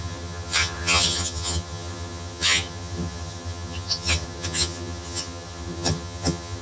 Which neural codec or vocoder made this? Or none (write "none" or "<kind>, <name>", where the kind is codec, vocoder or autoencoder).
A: vocoder, HiFi-GAN